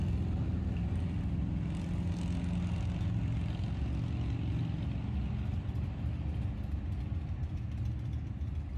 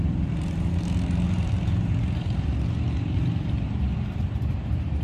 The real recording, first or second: first